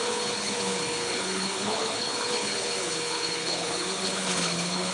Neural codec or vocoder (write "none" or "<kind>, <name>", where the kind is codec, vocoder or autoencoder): codec, HILCodec